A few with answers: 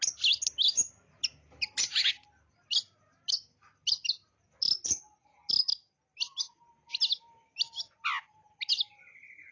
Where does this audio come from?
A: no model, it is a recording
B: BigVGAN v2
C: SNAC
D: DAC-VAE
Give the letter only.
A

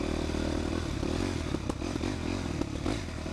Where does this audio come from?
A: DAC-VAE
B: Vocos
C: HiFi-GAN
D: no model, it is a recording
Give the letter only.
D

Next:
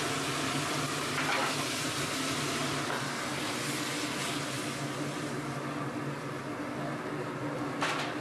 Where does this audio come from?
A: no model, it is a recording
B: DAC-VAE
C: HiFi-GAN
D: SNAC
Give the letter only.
A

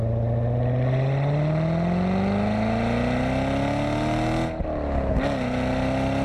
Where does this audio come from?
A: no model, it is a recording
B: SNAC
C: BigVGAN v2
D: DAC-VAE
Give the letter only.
A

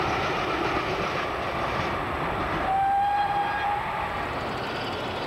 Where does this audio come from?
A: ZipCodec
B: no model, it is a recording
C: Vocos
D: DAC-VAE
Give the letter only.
B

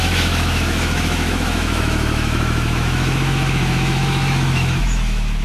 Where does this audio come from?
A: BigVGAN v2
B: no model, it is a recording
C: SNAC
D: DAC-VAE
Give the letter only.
D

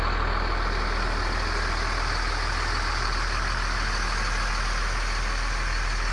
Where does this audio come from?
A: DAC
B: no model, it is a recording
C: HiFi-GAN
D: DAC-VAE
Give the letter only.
B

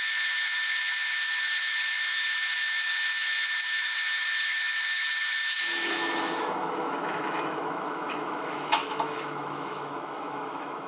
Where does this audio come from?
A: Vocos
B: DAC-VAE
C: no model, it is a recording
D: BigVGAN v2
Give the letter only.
B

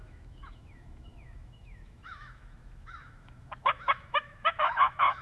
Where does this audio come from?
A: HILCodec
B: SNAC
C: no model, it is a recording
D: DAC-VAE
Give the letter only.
D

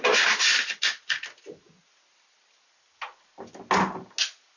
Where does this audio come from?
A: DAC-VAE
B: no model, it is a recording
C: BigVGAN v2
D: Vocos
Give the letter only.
B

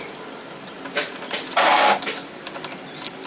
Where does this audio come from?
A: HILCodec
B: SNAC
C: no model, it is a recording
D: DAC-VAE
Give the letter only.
C